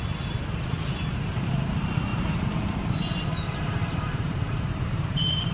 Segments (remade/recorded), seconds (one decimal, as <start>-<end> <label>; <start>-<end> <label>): 0.0-2.1 recorded; 2.1-5.5 remade